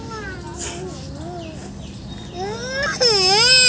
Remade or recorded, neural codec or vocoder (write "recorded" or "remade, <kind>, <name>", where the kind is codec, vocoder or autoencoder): recorded